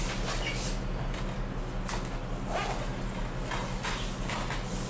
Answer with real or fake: real